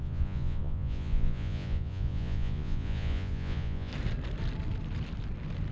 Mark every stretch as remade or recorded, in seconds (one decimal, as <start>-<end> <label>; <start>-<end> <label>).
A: 0.0-3.9 remade; 3.9-5.7 recorded